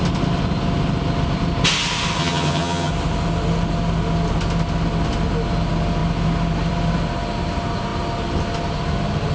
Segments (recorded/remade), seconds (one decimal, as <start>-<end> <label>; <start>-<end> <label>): 0.0-2.2 recorded; 2.2-2.9 remade; 2.9-9.3 recorded